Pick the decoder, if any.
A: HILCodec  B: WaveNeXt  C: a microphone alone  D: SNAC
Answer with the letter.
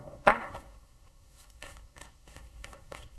D